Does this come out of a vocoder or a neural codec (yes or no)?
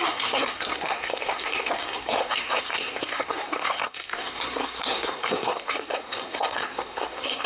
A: yes